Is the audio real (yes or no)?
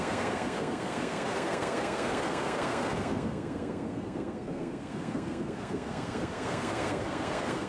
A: no